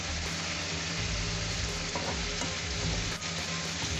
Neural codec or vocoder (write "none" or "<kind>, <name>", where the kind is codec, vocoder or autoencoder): none